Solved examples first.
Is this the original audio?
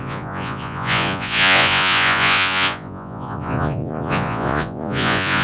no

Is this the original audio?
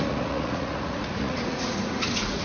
no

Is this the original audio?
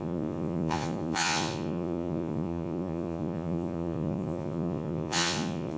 no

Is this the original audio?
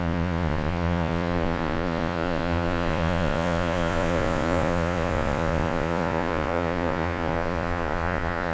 no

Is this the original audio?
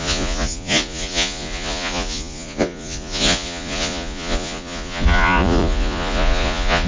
no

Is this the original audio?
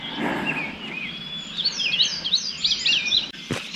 yes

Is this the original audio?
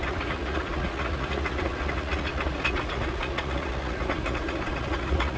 no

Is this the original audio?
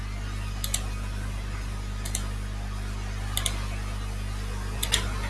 yes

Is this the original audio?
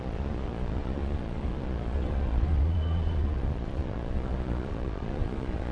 no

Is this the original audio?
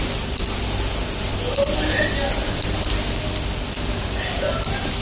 yes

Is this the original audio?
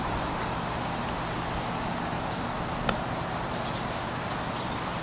yes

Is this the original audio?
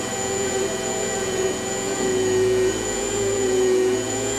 no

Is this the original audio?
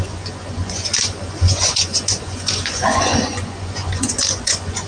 no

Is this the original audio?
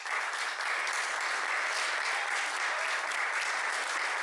yes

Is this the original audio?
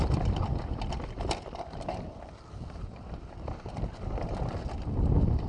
yes